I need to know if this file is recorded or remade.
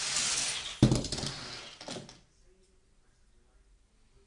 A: recorded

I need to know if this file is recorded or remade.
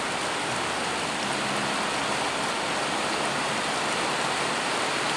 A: recorded